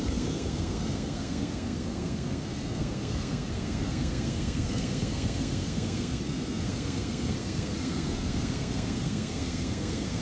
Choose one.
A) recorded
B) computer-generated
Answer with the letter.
B